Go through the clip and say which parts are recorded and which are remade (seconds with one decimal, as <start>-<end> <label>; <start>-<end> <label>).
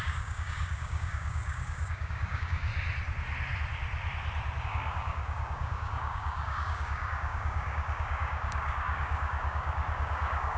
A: 0.0-2.7 remade; 2.7-4.6 recorded; 4.6-10.6 remade